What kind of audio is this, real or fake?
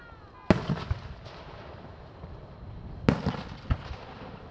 real